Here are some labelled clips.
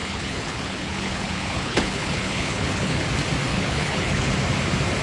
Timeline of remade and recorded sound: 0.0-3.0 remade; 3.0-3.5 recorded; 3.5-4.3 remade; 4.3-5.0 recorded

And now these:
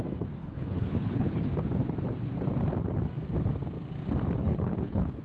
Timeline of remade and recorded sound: 0.0-0.4 recorded; 0.4-1.5 remade; 1.5-4.4 recorded; 4.4-5.2 remade

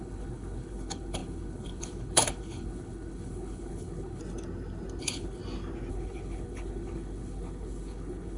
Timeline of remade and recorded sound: 0.0-4.2 remade; 4.2-5.0 recorded; 5.0-5.4 remade; 5.4-5.9 recorded; 5.9-8.4 remade

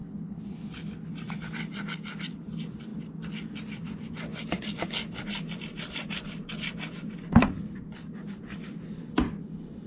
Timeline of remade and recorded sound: 0.0-1.1 remade; 1.1-9.9 recorded

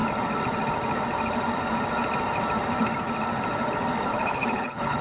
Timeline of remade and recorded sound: 0.0-4.1 recorded; 4.1-5.0 remade

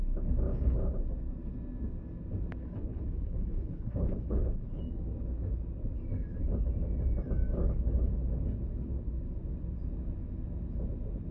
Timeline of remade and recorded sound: 0.0-2.6 recorded; 2.6-4.8 remade; 4.8-11.3 recorded

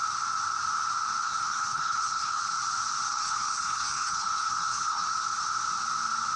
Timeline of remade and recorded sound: 0.0-1.2 recorded; 1.2-2.4 remade; 2.4-3.1 recorded; 3.1-5.1 remade; 5.1-6.4 recorded

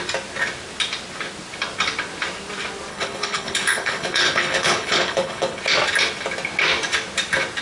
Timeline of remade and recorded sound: 0.0-2.9 recorded; 2.9-5.6 remade; 5.6-7.6 recorded